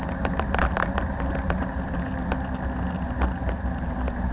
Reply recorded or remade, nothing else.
recorded